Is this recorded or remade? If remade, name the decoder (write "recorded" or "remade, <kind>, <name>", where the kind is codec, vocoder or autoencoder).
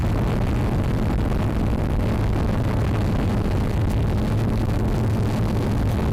recorded